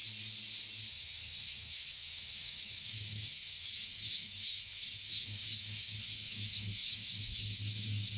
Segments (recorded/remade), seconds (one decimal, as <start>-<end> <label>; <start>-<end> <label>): 0.0-0.9 recorded; 0.9-8.2 remade